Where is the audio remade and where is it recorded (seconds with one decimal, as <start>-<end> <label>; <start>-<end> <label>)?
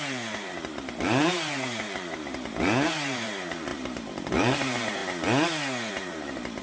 0.0-5.0 remade; 5.0-5.9 recorded; 5.9-6.6 remade